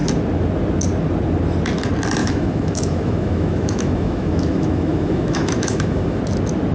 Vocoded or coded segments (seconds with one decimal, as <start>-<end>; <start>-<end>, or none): 2.2-6.2